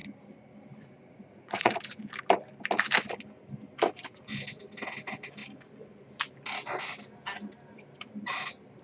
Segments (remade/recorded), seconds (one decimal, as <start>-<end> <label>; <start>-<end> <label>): 0.0-1.0 recorded; 1.0-1.8 remade; 1.8-8.8 recorded